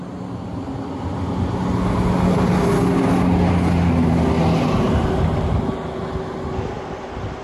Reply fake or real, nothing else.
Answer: real